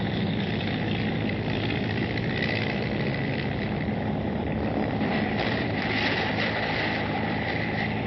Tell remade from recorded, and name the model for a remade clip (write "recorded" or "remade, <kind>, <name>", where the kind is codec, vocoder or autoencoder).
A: remade, vocoder, BigVGAN v2